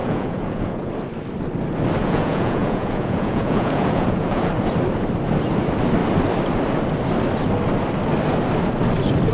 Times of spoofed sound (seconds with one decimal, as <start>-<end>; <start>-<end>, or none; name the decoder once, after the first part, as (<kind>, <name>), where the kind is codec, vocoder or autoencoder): 0.0-0.9 (vocoder, Vocos); 2.0-4.5